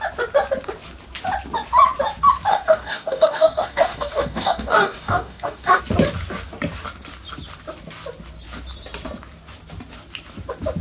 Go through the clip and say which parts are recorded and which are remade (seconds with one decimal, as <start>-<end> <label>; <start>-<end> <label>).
0.0-2.5 recorded; 2.5-5.8 remade; 5.8-10.8 recorded